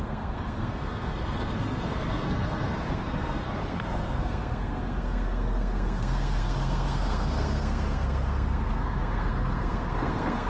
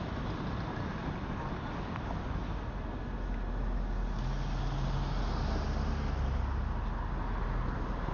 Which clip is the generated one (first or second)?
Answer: first